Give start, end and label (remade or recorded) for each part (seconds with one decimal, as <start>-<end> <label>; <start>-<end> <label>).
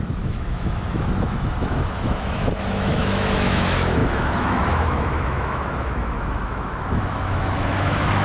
0.0-8.2 remade